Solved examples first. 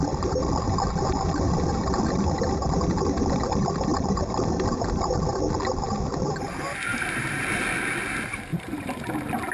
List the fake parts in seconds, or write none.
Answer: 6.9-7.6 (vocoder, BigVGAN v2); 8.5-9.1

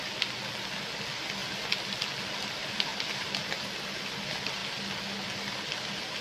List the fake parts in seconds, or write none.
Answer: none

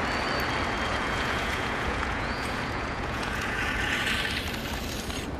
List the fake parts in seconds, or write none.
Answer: 0.9-4.1 (vocoder, Vocos)